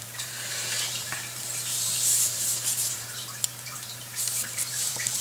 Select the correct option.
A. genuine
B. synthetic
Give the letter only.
B